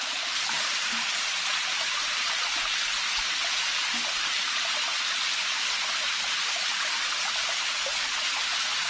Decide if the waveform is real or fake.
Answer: real